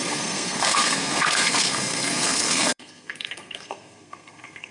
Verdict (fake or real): fake